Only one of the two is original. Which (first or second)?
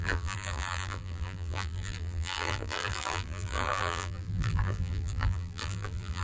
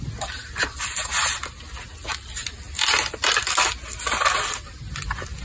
second